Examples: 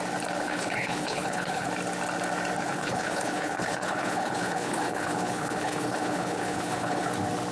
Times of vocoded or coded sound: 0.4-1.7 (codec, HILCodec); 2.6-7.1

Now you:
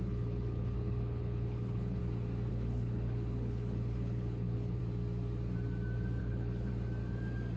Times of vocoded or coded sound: 0.0-2.0 (codec, HILCodec); 2.5-4.8; 6.2-6.7

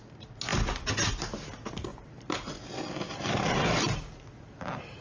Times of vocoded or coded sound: 1.9-5.0 (vocoder, BigVGAN v2)

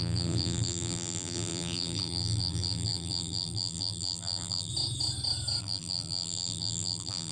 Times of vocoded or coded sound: 0.0-4.7 (vocoder, BigVGAN v2); 5.6-7.3

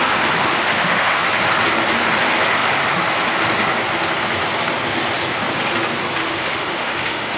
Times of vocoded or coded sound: 0.4-1.2 (autoencoder, DAC-VAE); 6.2-7.4

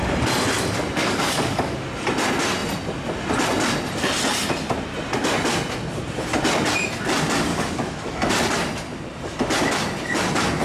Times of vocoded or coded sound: 1.0-1.9 (codec, DAC); 7.5-8.3

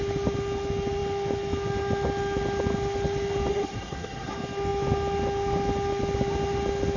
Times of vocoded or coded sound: 3.5-4.3 (codec, SNAC)